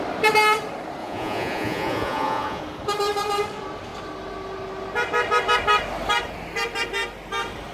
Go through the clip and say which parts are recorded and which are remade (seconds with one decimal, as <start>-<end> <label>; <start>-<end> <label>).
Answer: 0.0-1.0 recorded; 1.0-2.6 remade; 2.6-7.7 recorded